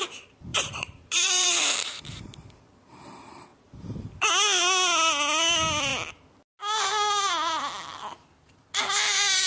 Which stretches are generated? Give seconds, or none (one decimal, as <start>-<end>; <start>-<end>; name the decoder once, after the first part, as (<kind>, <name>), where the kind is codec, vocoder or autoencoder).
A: 0.5-2.6 (vocoder, BigVGAN v2); 3.5-4.3